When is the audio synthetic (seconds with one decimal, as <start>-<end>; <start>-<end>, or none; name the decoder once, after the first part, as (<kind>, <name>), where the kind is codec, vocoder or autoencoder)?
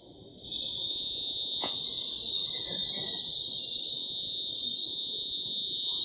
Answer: 0.9-1.7 (vocoder, Vocos); 4.0-4.5; 4.9-6.0